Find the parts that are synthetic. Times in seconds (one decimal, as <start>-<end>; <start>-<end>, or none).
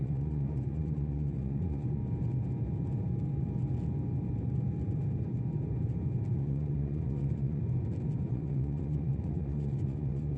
0.0-2.0; 6.3-7.6; 8.3-10.4